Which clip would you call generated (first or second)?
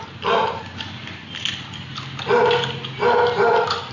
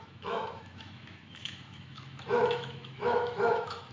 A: second